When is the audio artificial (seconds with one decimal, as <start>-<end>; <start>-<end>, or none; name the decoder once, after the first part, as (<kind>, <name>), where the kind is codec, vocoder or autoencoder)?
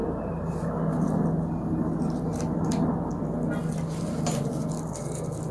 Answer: none